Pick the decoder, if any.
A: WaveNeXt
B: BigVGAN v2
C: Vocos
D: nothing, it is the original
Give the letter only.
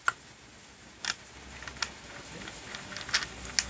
D